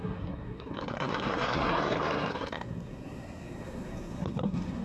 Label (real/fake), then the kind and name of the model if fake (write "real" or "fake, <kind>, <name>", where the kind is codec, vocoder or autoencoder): fake, codec, SNAC